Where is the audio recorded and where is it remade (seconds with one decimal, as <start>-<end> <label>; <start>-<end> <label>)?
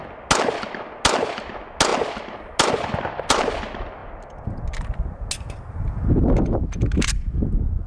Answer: 0.0-7.9 recorded